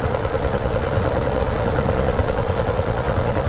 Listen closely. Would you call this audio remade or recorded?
remade